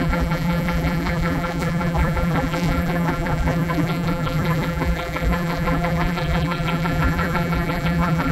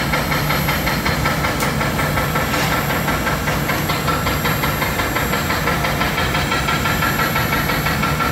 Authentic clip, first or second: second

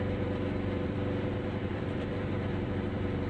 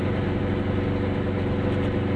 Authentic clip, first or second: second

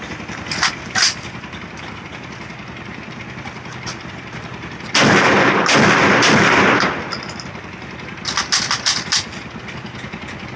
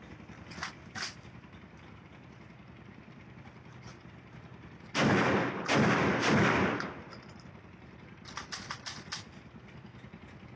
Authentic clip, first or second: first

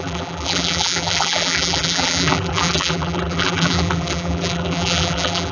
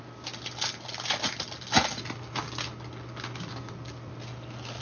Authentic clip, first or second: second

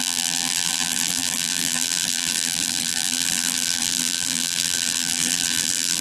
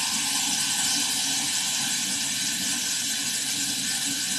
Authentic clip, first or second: second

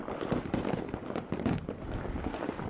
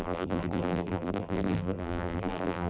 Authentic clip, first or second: first